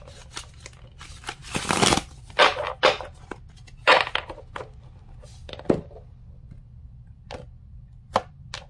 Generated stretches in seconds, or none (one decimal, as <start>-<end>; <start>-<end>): none